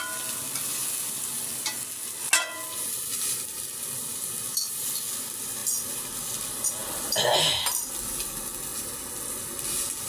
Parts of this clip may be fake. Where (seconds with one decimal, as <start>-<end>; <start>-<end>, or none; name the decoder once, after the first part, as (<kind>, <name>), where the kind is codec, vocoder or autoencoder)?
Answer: 0.8-1.5 (vocoder, BigVGAN v2); 6.8-7.3